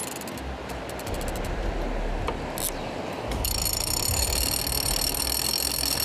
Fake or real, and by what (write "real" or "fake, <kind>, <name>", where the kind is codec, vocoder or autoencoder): real